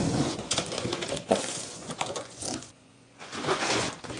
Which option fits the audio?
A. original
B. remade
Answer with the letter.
B